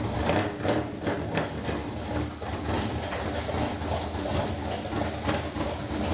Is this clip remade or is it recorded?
recorded